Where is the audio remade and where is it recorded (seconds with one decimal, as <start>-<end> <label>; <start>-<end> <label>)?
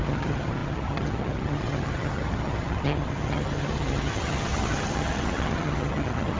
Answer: 0.0-6.4 remade